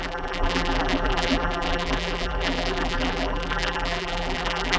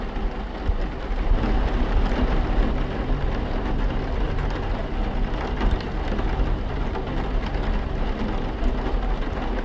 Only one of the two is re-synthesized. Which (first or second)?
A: first